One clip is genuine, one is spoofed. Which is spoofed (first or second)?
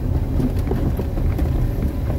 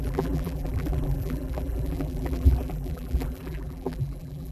second